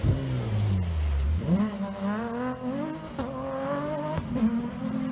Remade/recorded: recorded